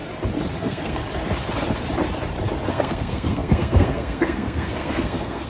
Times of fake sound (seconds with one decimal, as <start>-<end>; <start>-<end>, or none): 0.6-1.0; 2.7-5.5